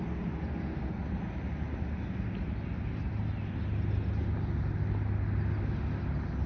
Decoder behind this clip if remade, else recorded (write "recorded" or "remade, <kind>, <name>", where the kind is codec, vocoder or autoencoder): recorded